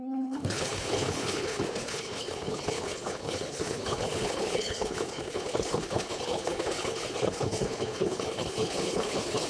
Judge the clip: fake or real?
fake